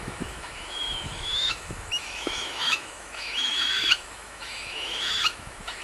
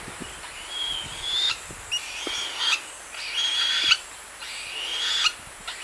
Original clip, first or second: second